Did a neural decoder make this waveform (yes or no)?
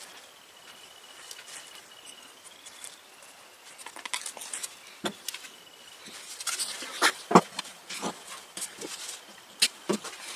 no